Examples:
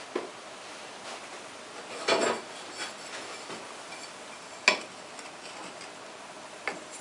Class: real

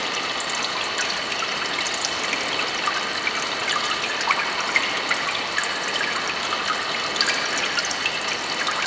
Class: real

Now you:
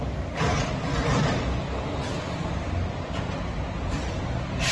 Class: real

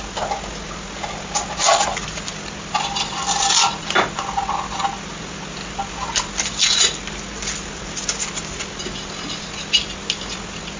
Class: real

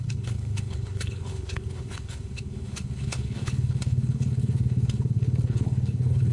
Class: fake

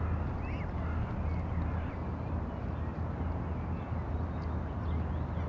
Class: real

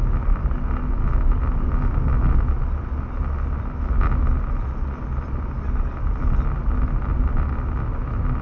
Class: real